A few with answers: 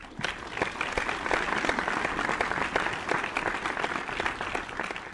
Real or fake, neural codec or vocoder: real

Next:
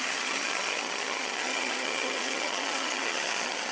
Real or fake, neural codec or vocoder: fake, vocoder, HiFi-GAN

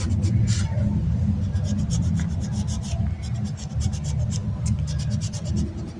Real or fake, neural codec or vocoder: real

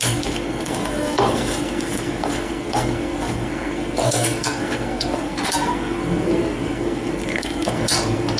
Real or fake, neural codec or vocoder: fake, codec, SNAC